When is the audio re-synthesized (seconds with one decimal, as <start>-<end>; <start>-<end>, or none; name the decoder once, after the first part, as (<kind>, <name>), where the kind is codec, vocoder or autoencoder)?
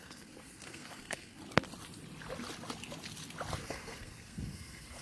0.0-1.4 (codec, SNAC); 3.6-5.0